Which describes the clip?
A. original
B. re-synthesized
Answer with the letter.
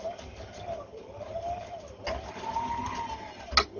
A